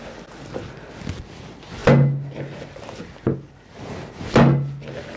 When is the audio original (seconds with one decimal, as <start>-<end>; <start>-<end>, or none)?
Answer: 0.0-5.2